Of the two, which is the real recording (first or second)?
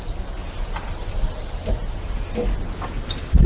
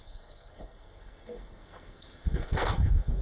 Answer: first